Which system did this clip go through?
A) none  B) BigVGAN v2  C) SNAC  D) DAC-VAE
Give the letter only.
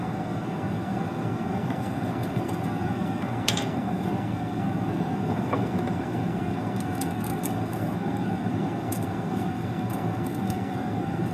C